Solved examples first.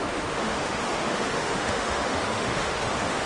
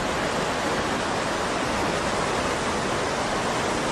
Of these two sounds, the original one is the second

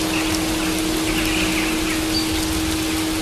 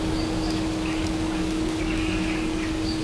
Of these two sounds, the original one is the first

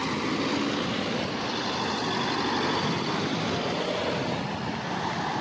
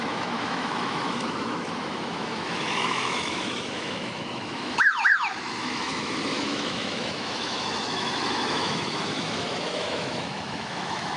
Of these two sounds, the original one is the first